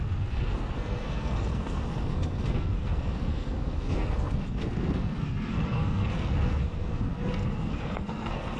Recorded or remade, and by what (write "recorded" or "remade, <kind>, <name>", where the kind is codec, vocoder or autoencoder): remade, codec, SNAC